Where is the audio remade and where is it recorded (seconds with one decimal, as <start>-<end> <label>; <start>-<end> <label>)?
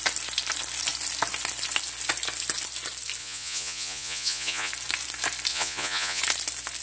0.0-3.2 recorded; 3.2-4.7 remade; 4.7-5.5 recorded; 5.5-6.2 remade; 6.2-6.8 recorded